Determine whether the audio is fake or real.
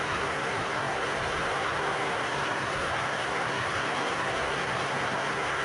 fake